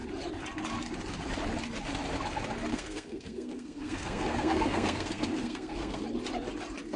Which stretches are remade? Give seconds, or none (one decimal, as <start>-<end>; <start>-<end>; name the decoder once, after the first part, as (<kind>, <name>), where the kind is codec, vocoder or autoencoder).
2.7-6.0 (codec, SNAC)